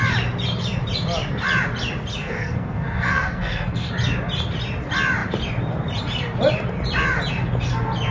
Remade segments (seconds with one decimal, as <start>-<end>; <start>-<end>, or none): 2.2-3.9